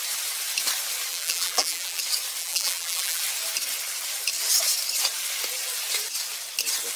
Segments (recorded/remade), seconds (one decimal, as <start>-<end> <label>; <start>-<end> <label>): 0.0-1.1 recorded; 1.1-2.0 remade; 2.0-2.4 recorded; 2.4-3.2 remade; 3.2-7.0 recorded